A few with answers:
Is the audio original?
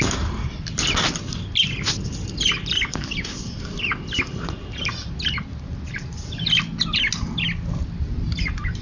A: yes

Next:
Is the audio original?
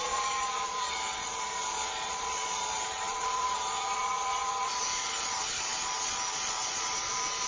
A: no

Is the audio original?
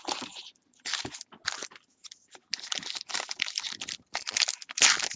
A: yes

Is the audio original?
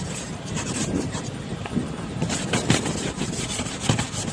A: yes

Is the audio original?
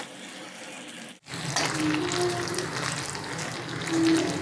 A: yes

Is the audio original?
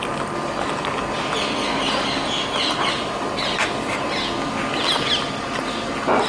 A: yes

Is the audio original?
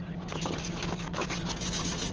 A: yes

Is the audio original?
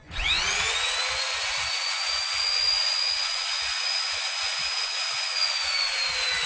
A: no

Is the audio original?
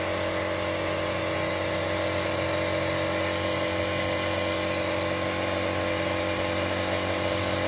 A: yes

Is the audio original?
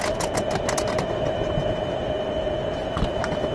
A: yes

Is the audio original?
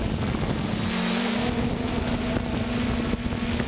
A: yes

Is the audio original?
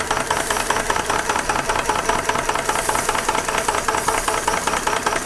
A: yes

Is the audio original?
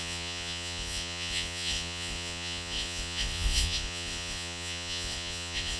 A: no